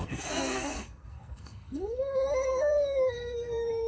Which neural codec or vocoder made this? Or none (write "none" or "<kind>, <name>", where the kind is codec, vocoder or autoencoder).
codec, SNAC